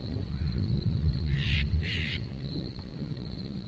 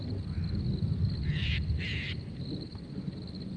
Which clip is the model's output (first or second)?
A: first